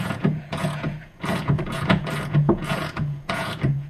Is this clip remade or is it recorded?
remade